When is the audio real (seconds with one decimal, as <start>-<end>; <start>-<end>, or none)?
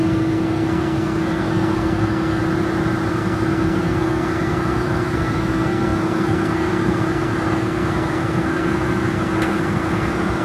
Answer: 2.4-3.1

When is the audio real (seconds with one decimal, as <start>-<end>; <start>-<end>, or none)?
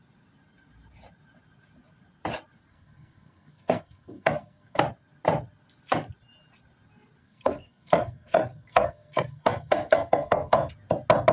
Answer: 0.0-2.7; 4.8-7.2; 10.7-11.3